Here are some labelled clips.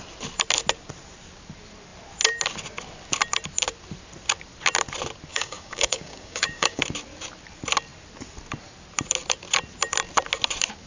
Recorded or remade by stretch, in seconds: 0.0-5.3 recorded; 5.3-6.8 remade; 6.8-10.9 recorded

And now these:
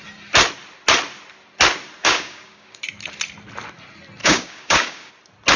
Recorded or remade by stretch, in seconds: 0.0-2.0 recorded; 2.0-2.8 remade; 2.8-4.2 recorded; 4.2-5.1 remade; 5.1-5.6 recorded

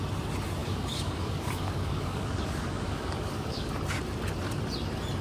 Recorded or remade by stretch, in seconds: 0.0-0.6 recorded; 0.6-3.7 remade; 3.7-5.2 recorded

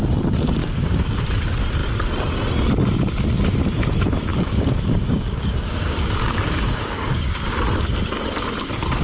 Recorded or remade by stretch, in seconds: 0.0-0.6 recorded; 0.6-1.2 remade; 1.2-4.3 recorded; 4.3-7.4 remade; 7.4-9.0 recorded